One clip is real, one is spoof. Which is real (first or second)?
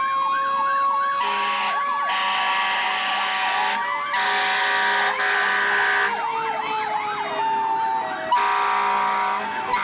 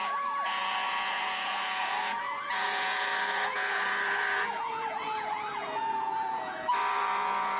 first